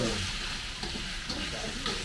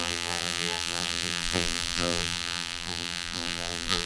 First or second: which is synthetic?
second